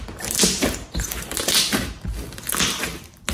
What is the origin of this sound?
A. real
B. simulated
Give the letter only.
A